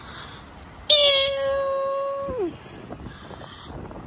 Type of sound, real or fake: real